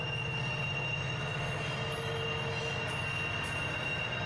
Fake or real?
real